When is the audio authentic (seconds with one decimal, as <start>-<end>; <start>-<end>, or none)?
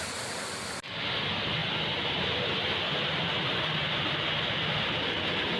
0.0-5.6